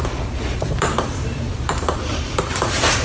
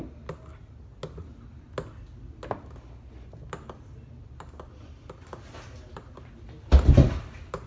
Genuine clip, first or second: second